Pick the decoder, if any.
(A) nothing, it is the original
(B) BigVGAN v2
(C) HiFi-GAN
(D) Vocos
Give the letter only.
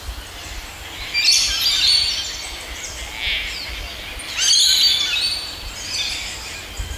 A